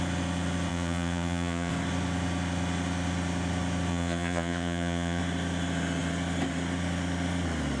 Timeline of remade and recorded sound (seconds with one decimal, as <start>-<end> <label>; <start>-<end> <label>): 0.0-0.7 recorded; 0.7-1.7 remade; 1.7-3.9 recorded; 3.9-5.2 remade; 5.2-7.8 recorded